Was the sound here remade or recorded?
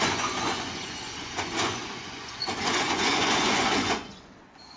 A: remade